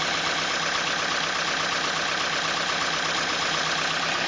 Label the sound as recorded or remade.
recorded